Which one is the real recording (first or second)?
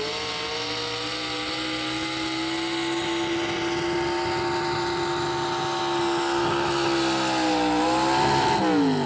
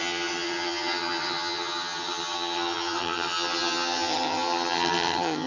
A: first